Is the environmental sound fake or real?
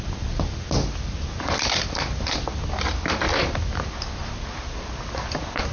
real